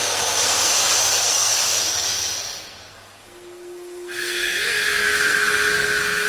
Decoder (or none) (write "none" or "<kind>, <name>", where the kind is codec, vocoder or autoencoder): codec, SNAC